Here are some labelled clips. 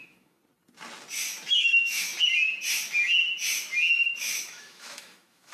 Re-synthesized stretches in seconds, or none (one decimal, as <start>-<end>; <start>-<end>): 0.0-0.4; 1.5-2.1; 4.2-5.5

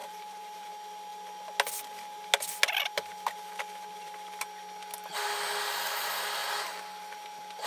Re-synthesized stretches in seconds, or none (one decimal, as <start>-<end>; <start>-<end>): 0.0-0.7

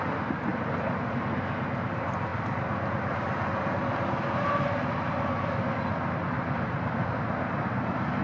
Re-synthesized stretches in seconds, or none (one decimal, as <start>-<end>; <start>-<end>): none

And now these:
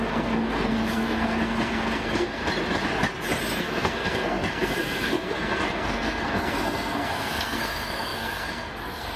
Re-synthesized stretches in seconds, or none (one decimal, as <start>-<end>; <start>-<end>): 0.0-2.4; 3.6-9.2

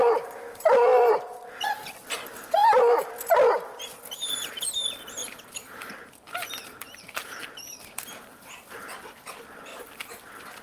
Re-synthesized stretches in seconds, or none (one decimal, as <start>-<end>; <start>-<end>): 2.6-3.1; 5.2-8.7; 9.7-10.2